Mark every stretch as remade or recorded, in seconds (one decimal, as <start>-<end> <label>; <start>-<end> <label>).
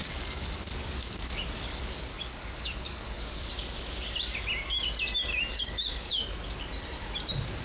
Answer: 0.0-3.5 remade; 3.5-5.3 recorded; 5.3-6.5 remade; 6.5-7.6 recorded